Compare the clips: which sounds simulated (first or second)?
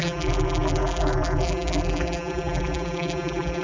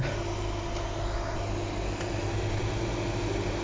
first